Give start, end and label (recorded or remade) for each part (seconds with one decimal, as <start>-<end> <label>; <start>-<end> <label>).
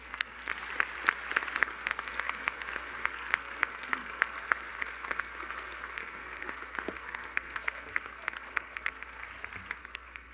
0.0-0.5 remade; 0.5-1.6 recorded; 1.6-9.2 remade; 9.2-9.8 recorded; 9.8-10.3 remade